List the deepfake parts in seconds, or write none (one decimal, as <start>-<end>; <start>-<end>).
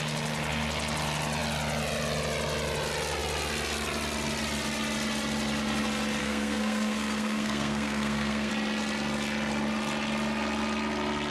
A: 6.2-8.5